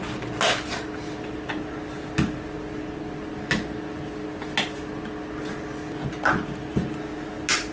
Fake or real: real